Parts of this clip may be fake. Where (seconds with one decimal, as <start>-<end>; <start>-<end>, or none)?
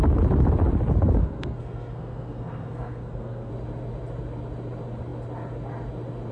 1.2-3.5